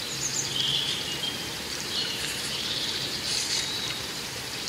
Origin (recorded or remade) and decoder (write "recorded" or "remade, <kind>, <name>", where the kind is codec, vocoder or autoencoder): remade, vocoder, BigVGAN v2